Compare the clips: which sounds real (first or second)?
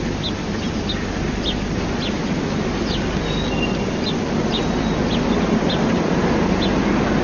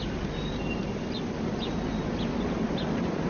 first